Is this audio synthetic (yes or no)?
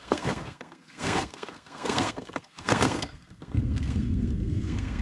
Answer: yes